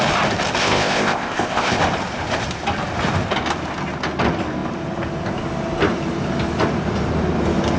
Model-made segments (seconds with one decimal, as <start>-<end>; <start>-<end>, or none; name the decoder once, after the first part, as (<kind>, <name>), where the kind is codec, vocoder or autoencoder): 0.6-1.8 (codec, ZipCodec)